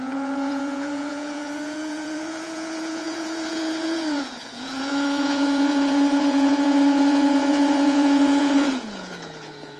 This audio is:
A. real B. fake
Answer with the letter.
B